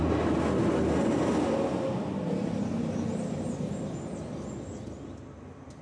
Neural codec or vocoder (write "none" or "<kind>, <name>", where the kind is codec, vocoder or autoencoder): none